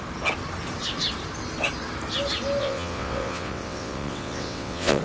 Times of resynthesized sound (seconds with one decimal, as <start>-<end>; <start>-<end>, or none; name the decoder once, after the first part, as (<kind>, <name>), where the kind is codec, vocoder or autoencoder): 2.6-5.0 (vocoder, WaveNeXt)